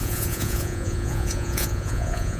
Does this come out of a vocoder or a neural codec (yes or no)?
yes